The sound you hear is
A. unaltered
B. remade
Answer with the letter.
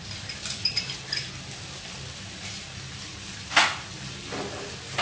A